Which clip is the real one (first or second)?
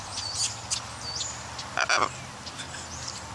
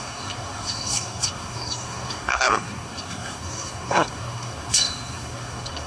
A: first